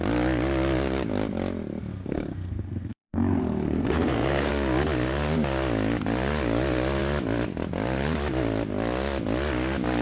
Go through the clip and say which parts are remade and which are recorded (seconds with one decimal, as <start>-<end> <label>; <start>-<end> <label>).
0.0-1.9 recorded; 1.9-4.5 remade; 4.5-10.0 recorded

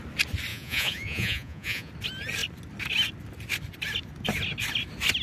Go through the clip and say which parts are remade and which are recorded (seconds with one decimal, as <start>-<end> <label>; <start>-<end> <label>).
0.0-0.5 recorded; 0.5-1.9 remade; 1.9-5.2 recorded

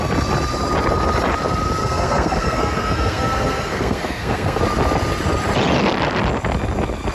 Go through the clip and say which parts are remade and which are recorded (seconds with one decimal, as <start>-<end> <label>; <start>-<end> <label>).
0.0-1.8 recorded; 1.8-4.6 remade; 4.6-7.1 recorded

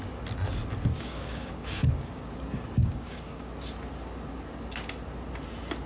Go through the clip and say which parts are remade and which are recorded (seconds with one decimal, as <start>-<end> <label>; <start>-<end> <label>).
0.0-0.9 recorded; 0.9-2.2 remade; 2.2-2.8 recorded; 2.8-3.5 remade; 3.5-5.9 recorded

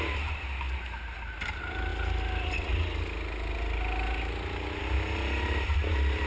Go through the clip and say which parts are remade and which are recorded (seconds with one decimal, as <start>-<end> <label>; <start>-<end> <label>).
0.0-6.3 recorded

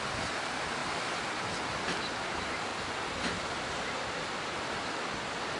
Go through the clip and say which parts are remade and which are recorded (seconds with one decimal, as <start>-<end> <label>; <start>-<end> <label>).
0.0-5.6 recorded